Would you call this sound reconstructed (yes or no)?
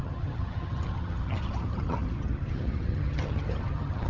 yes